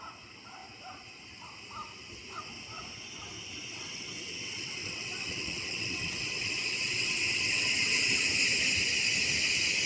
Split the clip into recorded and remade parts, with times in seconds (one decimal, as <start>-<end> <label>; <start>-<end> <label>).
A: 0.0-3.7 recorded; 3.7-8.1 remade; 8.1-9.9 recorded